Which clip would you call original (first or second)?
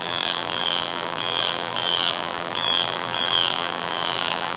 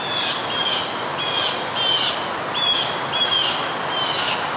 second